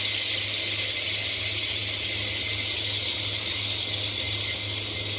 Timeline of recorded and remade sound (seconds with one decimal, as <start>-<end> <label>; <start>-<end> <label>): 0.0-5.2 recorded